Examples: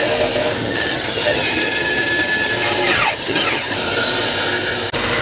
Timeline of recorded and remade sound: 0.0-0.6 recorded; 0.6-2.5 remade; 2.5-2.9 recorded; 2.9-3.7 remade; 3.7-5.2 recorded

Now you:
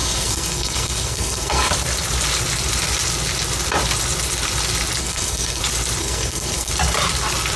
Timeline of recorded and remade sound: 0.0-1.7 remade; 1.7-5.0 recorded; 5.0-5.6 remade; 5.6-6.0 recorded; 6.0-6.7 remade; 6.7-7.6 recorded

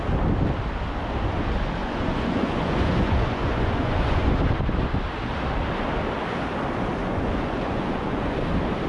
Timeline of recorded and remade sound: 0.0-1.8 recorded; 1.8-4.3 remade; 4.3-7.0 recorded; 7.0-8.4 remade; 8.4-8.9 recorded

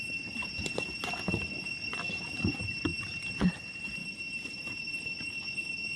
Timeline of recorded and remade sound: 0.0-0.4 recorded; 0.4-1.1 remade; 1.1-2.9 recorded; 2.9-3.5 remade; 3.5-4.0 recorded; 4.0-4.9 remade; 4.9-6.0 recorded

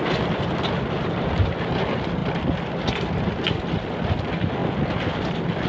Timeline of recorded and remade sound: 0.0-5.7 recorded